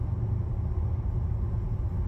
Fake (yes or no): no